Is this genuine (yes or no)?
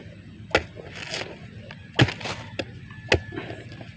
yes